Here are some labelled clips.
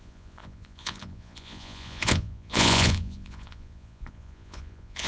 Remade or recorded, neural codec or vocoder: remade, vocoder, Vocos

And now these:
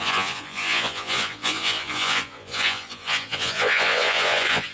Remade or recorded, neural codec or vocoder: remade, vocoder, Vocos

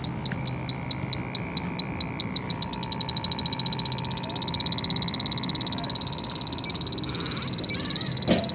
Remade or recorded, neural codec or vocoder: recorded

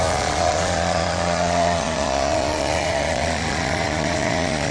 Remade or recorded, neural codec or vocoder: remade, vocoder, Vocos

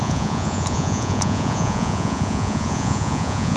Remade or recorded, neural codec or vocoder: remade, vocoder, Vocos